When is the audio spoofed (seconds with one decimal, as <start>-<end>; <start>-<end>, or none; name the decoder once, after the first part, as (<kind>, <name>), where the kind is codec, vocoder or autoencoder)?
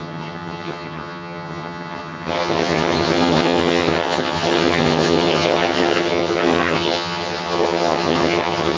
0.0-8.8 (vocoder, HiFi-GAN)